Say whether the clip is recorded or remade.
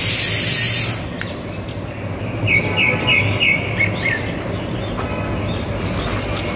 recorded